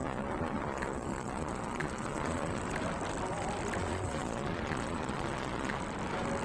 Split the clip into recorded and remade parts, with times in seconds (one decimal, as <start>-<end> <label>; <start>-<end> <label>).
0.0-2.6 remade; 2.6-3.8 recorded; 3.8-5.8 remade; 5.8-6.4 recorded